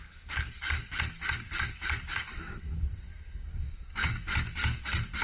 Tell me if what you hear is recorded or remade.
remade